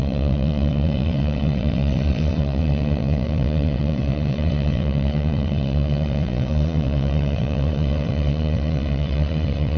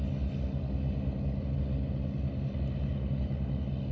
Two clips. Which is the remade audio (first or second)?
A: first